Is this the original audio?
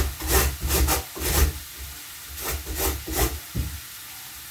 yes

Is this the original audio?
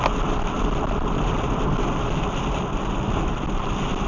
yes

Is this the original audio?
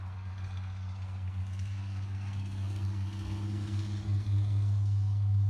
no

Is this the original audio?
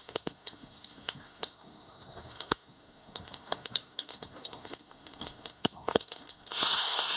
no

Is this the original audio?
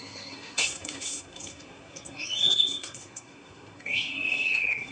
no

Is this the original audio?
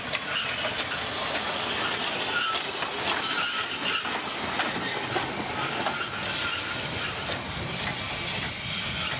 yes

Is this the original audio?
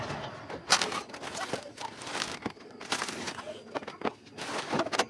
yes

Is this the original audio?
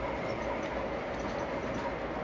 yes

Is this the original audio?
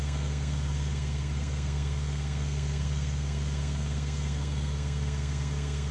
no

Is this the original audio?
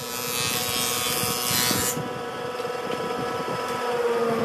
yes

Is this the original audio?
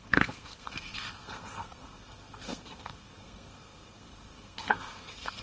no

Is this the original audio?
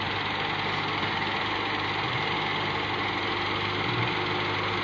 yes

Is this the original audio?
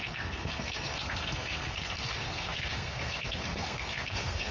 no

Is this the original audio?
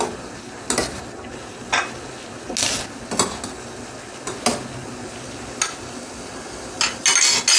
yes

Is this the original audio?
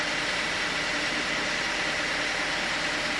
yes